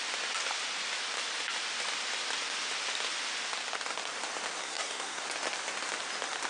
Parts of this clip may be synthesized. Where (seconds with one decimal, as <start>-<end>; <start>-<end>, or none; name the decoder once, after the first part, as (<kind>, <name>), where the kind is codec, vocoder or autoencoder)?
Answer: 4.6-5.2 (codec, SNAC)

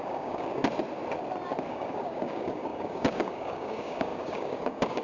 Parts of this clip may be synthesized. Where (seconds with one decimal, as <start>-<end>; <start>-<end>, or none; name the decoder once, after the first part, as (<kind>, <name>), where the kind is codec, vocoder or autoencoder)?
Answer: 0.0-0.6 (codec, DAC); 1.7-5.0

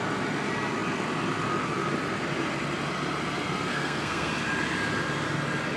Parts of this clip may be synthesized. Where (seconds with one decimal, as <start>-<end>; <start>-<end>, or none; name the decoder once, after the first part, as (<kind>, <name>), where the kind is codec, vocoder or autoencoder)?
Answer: 3.7-4.3 (codec, SNAC)

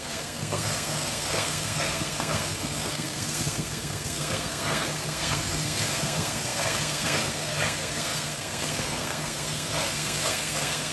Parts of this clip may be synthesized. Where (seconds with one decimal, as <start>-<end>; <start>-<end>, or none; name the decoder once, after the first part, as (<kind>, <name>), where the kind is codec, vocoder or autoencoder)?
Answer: 0.0-10.9 (codec, SNAC)

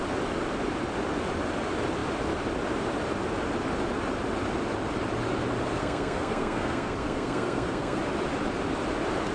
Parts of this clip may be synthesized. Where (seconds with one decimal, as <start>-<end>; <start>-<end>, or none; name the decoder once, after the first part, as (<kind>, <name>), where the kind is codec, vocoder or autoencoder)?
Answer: 5.8-8.0 (codec, SNAC)

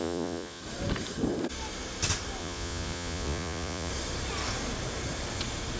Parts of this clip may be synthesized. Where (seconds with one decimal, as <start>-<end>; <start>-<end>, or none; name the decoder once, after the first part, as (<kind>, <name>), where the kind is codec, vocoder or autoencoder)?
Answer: 0.0-0.6 (vocoder, Vocos); 2.4-3.9

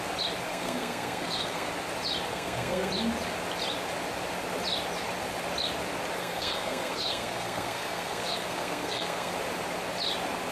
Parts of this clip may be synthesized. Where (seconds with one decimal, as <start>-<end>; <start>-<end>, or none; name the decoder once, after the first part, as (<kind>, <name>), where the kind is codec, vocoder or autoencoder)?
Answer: 0.5-1.7 (codec, SNAC); 2.3-2.9; 6.2-9.3